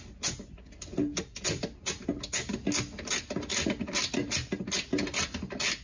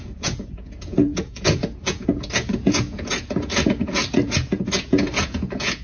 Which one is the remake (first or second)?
second